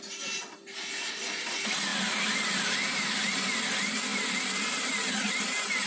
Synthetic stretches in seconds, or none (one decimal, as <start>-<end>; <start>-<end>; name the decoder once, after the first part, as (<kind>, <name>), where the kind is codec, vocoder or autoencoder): 4.1-5.3 (vocoder, BigVGAN v2)